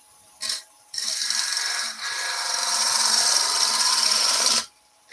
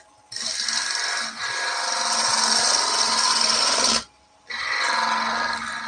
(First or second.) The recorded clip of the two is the second